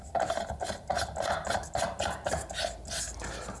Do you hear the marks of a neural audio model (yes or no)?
no